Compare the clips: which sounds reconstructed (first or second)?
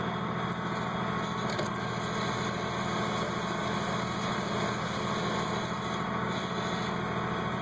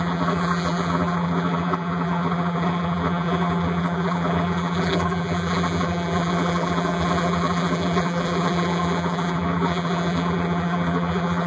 second